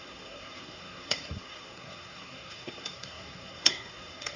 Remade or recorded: remade